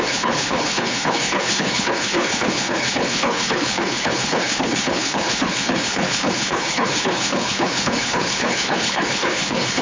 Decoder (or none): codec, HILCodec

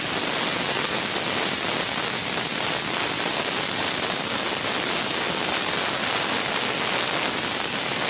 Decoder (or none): none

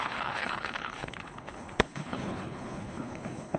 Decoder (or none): codec, HILCodec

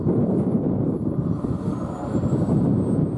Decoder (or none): none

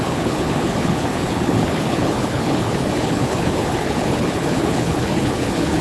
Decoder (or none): codec, HILCodec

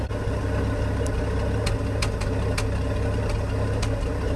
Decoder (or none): none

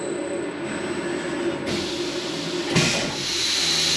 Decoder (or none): none